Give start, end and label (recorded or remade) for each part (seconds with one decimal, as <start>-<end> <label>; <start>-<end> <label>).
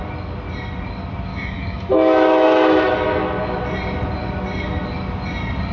0.0-1.3 recorded; 1.3-2.9 remade; 2.9-5.7 recorded